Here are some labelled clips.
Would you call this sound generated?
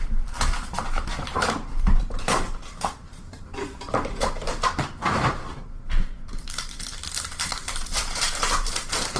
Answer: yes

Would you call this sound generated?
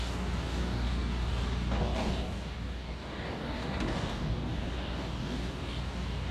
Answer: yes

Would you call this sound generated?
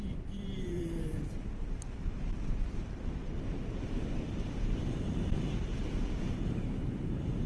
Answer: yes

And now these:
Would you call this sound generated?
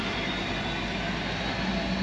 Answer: no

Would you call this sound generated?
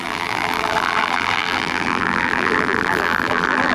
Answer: yes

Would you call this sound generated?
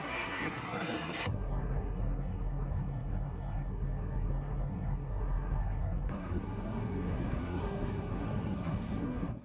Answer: yes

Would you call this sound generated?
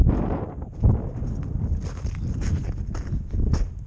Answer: no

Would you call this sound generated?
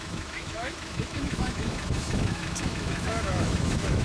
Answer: yes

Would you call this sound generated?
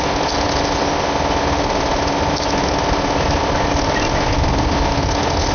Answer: no